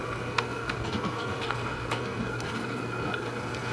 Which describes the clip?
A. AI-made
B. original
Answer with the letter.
A